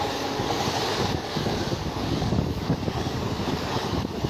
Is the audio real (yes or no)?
no